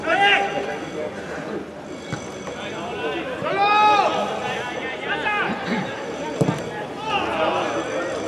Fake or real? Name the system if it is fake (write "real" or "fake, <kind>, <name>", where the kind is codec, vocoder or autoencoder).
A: real